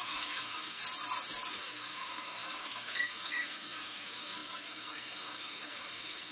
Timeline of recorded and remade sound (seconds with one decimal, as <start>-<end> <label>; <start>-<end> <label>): 0.0-0.8 remade; 0.8-1.5 recorded; 1.5-6.3 remade